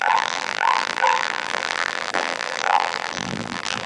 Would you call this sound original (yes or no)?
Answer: no